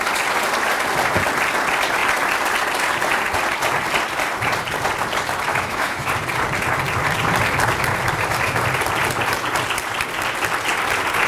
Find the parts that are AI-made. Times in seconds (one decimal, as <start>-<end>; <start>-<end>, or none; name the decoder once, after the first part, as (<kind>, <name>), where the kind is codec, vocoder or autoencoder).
5.5-6.1 (autoencoder, DAC-VAE)